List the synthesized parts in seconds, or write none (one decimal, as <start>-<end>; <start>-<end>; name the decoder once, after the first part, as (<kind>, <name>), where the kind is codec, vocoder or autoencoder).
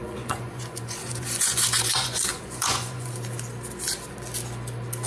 0.0-3.1 (vocoder, Vocos)